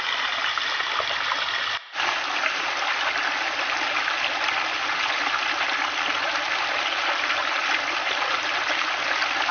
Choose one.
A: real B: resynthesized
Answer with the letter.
A